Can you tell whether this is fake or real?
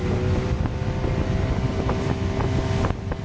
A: real